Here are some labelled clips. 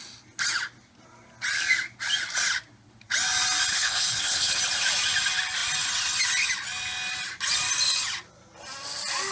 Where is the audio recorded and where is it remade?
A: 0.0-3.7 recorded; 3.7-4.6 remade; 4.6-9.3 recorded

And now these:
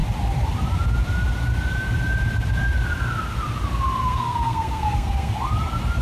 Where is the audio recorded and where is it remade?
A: 0.0-4.0 recorded; 4.0-5.3 remade; 5.3-6.0 recorded

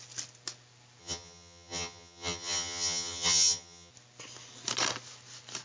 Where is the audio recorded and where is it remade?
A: 0.0-1.0 recorded; 1.0-3.9 remade; 3.9-5.6 recorded

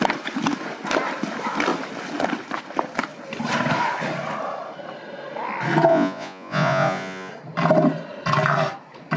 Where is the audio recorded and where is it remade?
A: 0.0-5.9 recorded; 5.9-7.3 remade; 7.3-9.2 recorded

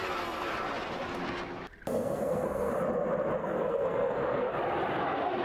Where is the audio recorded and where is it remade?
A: 0.0-1.9 recorded; 1.9-2.7 remade; 2.7-3.4 recorded; 3.4-4.5 remade; 4.5-5.4 recorded

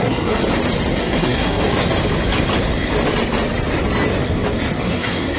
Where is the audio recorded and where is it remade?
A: 0.0-0.4 remade; 0.4-1.0 recorded; 1.0-1.6 remade; 1.6-4.8 recorded; 4.8-5.4 remade

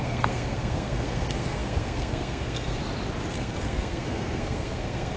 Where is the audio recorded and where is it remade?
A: 0.0-2.8 remade; 2.8-3.3 recorded; 3.3-5.2 remade